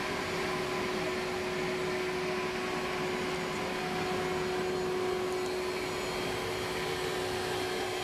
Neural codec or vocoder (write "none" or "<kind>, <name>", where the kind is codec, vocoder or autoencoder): none